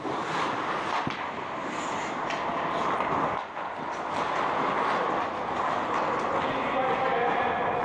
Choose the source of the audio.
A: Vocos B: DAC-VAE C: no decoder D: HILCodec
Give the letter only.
C